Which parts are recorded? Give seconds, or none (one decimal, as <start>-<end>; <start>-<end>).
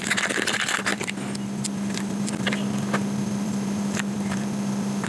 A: 0.0-5.1